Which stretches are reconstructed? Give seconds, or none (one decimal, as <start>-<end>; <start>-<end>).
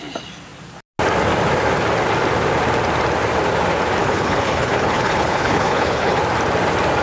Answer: 4.0-6.2